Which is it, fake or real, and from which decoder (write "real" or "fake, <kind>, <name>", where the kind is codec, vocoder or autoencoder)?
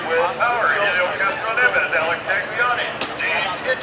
real